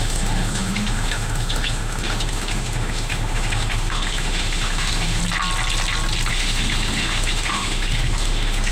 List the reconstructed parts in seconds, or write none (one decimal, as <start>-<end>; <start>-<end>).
0.0-5.2; 6.3-8.7